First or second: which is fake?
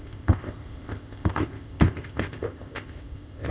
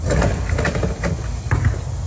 first